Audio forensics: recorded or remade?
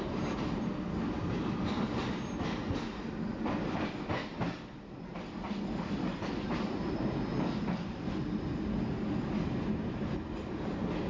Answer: recorded